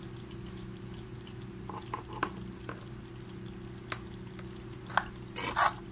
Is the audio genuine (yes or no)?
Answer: yes